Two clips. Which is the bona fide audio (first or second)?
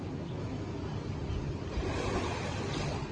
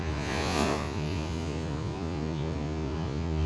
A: first